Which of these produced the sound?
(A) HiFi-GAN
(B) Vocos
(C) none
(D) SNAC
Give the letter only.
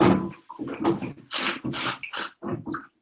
C